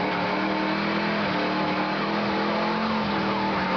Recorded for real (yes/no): yes